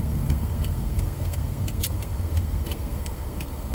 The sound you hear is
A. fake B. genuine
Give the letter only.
A